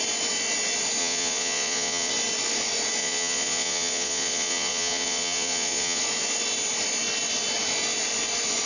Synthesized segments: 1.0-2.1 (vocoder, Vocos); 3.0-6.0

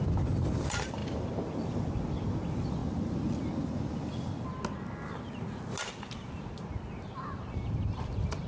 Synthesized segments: none